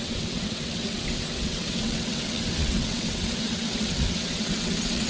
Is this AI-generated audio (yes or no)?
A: yes